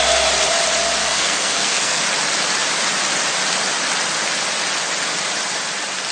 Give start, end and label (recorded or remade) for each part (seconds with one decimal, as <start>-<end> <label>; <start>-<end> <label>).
0.0-1.0 recorded; 1.0-2.0 remade; 2.0-6.1 recorded